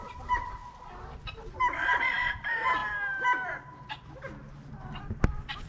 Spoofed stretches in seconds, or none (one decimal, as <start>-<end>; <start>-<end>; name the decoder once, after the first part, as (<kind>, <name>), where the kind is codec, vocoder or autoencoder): 0.0-0.6 (vocoder, BigVGAN v2); 1.2-2.8; 4.7-5.7